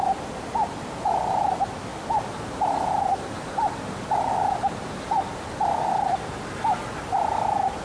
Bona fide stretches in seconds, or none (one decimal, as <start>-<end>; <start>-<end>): 0.0-7.8